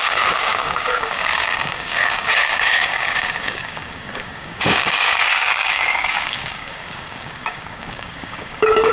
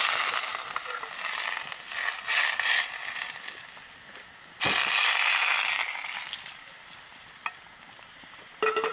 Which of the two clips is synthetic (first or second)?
first